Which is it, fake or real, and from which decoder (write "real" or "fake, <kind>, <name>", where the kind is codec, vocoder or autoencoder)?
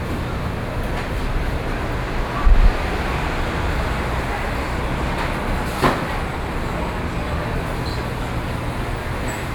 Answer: real